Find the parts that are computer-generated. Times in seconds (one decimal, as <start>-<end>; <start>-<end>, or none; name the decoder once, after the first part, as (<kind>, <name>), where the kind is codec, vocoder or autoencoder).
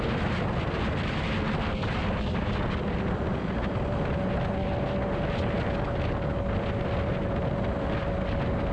none